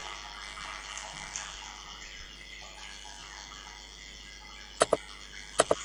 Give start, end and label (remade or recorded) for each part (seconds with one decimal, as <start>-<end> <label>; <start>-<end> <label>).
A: 0.0-0.8 recorded; 0.8-3.2 remade; 3.2-5.8 recorded